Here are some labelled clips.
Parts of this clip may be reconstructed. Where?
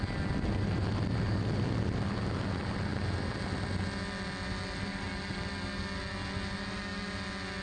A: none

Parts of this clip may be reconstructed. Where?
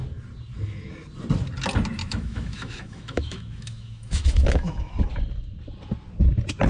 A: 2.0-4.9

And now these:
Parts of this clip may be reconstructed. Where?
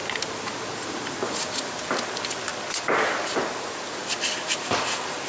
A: none